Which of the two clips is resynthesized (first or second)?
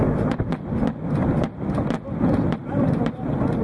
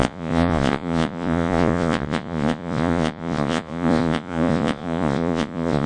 second